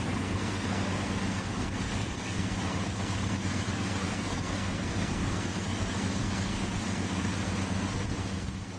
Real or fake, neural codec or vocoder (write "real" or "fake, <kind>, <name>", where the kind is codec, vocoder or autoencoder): fake, codec, SNAC